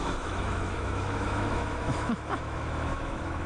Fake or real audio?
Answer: fake